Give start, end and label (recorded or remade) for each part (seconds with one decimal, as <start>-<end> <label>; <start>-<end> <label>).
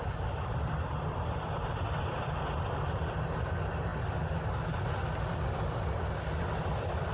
0.0-7.1 recorded